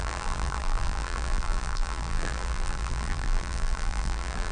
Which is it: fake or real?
fake